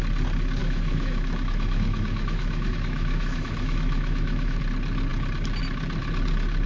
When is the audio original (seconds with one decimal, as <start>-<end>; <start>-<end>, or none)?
0.0-0.6; 4.6-6.7